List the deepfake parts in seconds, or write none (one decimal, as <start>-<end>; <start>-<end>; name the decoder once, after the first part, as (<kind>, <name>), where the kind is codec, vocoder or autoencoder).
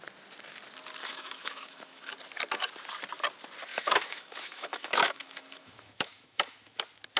1.0-2.1 (autoencoder, DAC-VAE); 3.7-6.8